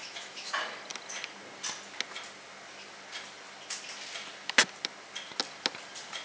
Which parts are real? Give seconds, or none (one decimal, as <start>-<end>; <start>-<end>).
0.5-6.2